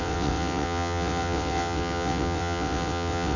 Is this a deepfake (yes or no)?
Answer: yes